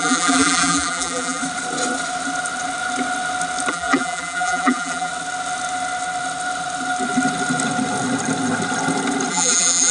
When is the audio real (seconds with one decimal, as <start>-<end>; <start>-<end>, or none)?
1.4-3.7; 5.1-9.3